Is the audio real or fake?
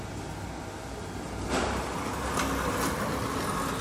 real